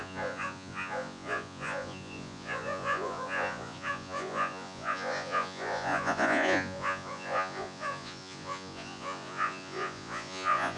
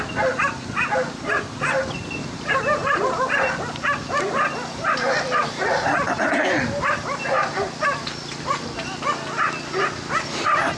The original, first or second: second